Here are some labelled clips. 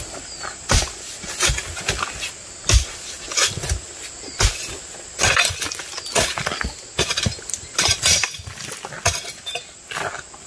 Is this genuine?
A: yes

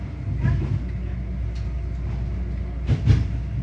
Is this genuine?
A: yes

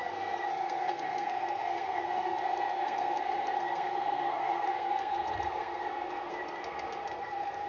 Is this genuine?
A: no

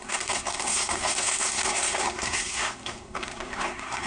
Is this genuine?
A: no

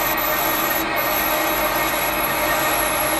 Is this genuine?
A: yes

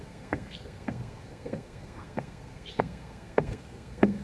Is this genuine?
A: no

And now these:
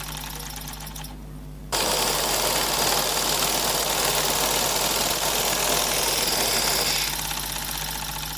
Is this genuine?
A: yes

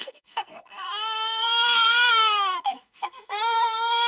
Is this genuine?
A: no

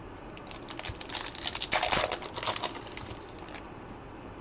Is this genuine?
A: yes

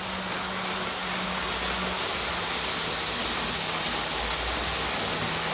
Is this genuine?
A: yes